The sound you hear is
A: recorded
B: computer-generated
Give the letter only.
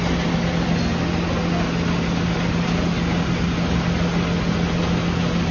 A